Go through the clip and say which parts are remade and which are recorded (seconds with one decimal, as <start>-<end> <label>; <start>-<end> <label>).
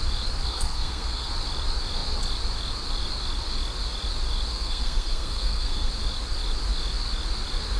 0.0-0.5 recorded; 0.5-1.3 remade; 1.3-4.5 recorded; 4.5-5.9 remade; 5.9-7.8 recorded